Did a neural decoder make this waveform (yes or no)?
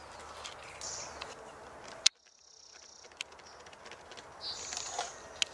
no